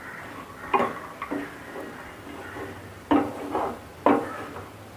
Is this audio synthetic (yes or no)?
no